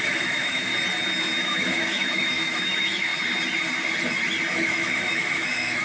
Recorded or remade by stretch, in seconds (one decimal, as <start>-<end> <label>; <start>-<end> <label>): 0.0-0.7 remade; 0.7-1.4 recorded; 1.4-3.1 remade; 3.1-4.5 recorded; 4.5-5.8 remade